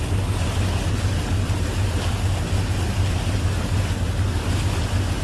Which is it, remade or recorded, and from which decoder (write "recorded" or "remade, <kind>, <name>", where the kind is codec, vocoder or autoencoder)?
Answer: recorded